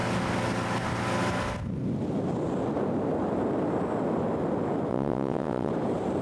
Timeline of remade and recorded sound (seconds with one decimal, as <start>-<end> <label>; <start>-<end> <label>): 0.0-4.9 recorded; 4.9-5.7 remade; 5.7-6.2 recorded